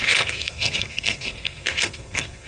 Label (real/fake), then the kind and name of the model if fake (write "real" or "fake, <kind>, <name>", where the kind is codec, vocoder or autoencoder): fake, codec, SNAC